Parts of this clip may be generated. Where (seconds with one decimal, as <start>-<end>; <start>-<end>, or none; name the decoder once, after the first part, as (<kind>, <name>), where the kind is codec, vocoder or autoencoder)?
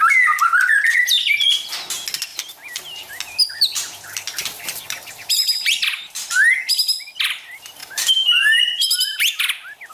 2.3-3.1 (vocoder, BigVGAN v2); 4.3-5.7; 7.8-9.4